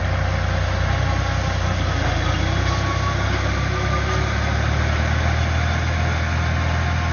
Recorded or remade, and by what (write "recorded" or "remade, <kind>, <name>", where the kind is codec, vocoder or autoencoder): recorded